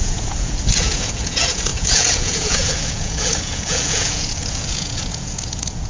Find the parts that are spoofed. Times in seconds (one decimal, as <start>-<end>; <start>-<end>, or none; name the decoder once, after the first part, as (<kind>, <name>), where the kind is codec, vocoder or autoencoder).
0.0-5.9 (vocoder, Vocos)